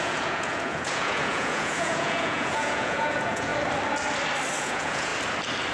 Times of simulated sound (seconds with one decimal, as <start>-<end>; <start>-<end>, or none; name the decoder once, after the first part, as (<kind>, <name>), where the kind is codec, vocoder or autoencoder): 0.0-3.5 (vocoder, Vocos); 4.6-5.1